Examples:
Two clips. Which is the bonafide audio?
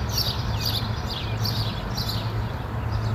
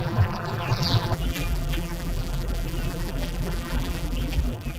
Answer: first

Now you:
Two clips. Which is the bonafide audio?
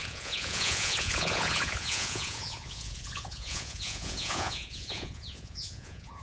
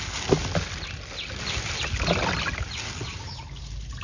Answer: second